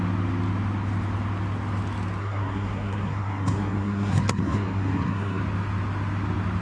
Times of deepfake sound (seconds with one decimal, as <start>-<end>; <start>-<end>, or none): 2.2-5.4